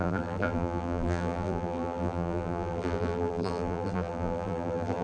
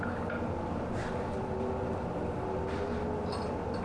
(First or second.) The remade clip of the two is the first